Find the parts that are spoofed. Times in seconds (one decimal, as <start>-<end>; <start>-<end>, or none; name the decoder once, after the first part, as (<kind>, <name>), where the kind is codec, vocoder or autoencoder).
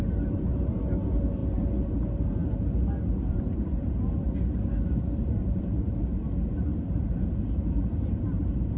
0.0-8.8 (vocoder, BigVGAN v2)